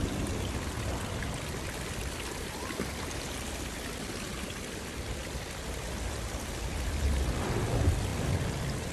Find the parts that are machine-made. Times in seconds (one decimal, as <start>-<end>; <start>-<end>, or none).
none